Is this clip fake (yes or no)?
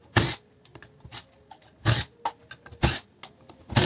no